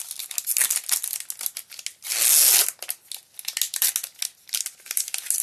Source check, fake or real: real